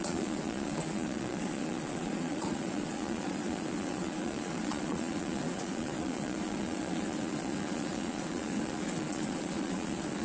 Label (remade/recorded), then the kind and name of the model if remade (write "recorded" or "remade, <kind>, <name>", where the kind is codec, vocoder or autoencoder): remade, vocoder, Vocos